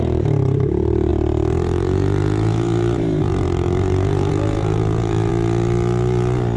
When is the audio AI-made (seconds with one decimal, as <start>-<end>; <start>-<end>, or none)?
0.0-5.3